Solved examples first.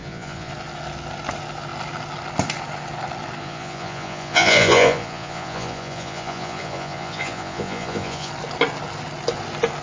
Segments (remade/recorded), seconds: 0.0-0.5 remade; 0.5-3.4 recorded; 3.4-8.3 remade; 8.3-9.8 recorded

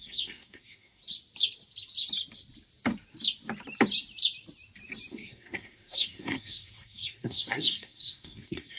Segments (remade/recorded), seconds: 0.0-1.0 remade; 1.0-5.1 recorded; 5.1-8.8 remade

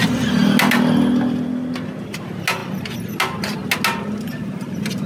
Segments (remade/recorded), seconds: 0.0-5.1 recorded

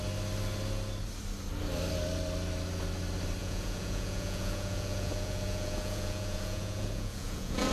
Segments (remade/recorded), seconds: 0.0-3.4 recorded; 3.4-7.7 remade

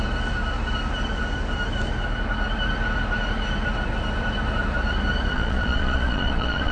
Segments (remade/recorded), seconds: 0.0-5.3 recorded; 5.3-6.7 remade